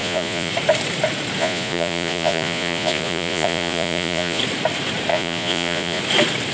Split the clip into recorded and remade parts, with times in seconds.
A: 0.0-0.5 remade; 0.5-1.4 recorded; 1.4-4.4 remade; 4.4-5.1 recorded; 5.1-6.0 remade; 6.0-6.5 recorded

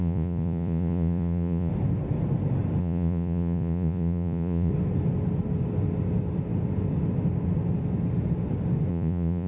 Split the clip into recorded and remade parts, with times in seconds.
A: 0.0-1.7 remade; 1.7-2.8 recorded; 2.8-4.7 remade; 4.7-8.9 recorded; 8.9-9.5 remade

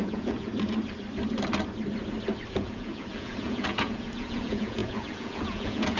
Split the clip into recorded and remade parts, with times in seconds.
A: 0.0-0.5 remade; 0.5-2.5 recorded; 2.5-6.0 remade

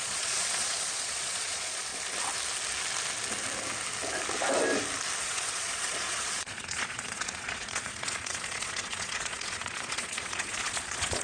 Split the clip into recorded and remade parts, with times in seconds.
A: 0.0-1.9 remade; 1.9-5.2 recorded; 5.2-11.2 remade

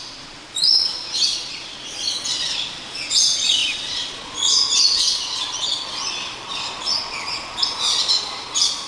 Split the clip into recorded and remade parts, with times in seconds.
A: 0.0-8.9 remade

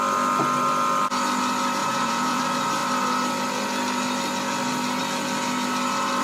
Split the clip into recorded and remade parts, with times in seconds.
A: 0.0-1.8 recorded; 1.8-2.4 remade; 2.4-6.2 recorded

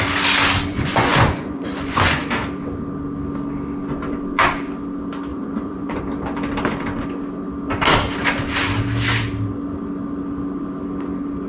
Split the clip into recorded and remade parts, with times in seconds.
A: 0.0-0.7 recorded; 0.7-2.2 remade; 2.2-5.3 recorded; 5.3-6.0 remade; 6.0-11.5 recorded